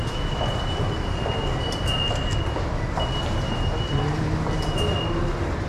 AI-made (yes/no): no